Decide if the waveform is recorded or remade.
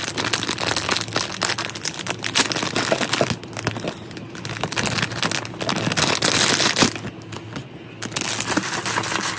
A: recorded